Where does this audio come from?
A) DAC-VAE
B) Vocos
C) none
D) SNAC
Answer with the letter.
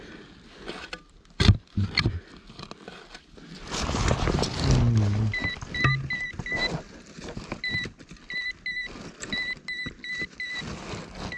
C